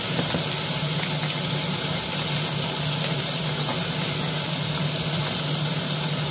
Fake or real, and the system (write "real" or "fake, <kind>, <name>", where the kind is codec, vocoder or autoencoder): real